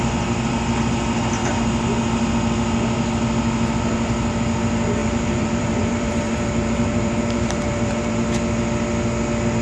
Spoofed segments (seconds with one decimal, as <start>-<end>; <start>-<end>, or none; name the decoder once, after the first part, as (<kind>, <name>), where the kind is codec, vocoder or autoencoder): 5.0-8.1 (vocoder, BigVGAN v2)